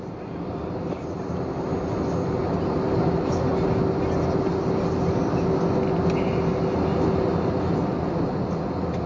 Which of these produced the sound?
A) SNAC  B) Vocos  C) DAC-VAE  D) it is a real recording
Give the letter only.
D